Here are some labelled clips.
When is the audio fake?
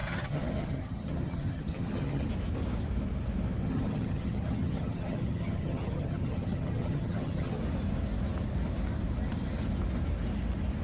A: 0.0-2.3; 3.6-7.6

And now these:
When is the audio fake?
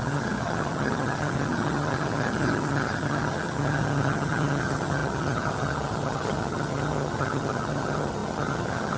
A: 0.0-9.0